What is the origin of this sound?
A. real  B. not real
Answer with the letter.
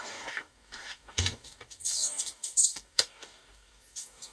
B